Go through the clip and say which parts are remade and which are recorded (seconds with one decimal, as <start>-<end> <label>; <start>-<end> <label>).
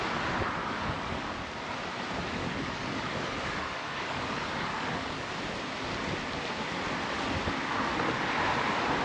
0.0-0.6 recorded; 0.6-1.3 remade; 1.3-2.4 recorded; 2.4-5.1 remade; 5.1-9.0 recorded